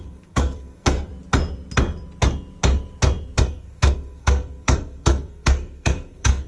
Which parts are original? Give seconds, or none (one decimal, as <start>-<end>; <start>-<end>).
1.1-3.4